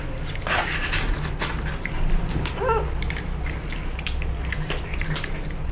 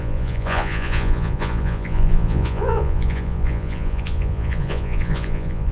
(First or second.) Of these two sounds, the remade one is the second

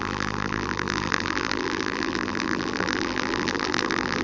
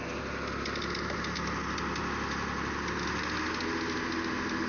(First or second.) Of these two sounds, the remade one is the first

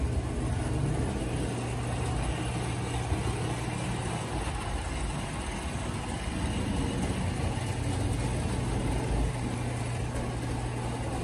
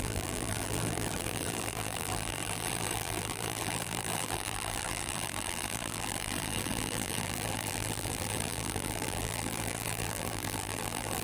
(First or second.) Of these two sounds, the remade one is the second